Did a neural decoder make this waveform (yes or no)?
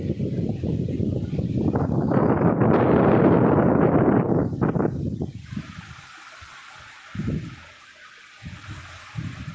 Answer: no